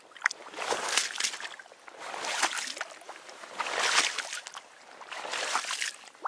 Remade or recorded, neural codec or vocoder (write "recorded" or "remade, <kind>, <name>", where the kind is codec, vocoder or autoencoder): recorded